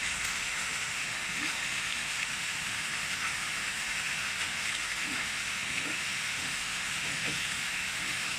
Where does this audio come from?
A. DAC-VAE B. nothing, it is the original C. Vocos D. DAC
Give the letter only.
A